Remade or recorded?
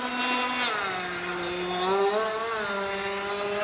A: recorded